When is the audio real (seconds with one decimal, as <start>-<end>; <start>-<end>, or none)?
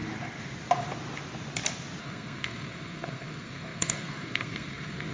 0.0-2.0